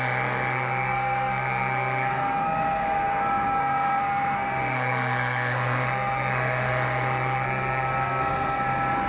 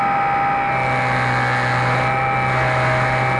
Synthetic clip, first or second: first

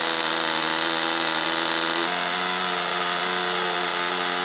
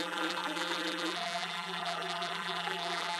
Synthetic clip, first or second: second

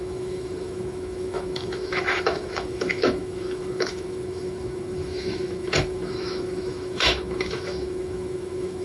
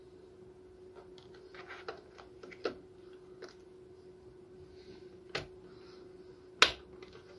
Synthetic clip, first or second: first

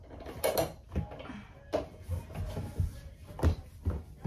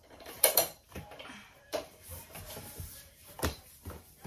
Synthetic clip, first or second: second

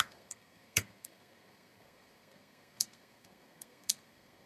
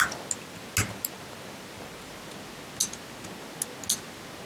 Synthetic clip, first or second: first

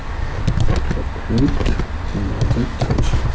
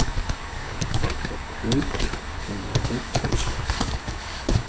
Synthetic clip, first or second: second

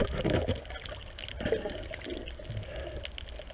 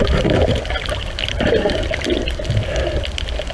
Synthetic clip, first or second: second